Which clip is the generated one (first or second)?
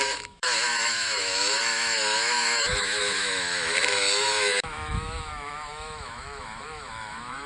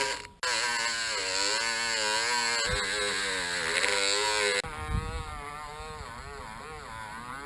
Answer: first